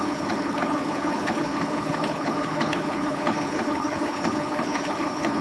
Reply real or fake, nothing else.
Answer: fake